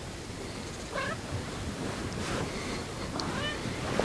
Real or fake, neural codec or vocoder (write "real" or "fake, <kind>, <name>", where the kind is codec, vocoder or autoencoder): real